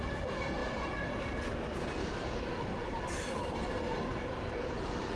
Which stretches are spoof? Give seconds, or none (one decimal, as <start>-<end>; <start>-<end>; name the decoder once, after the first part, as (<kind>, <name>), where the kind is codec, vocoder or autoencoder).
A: none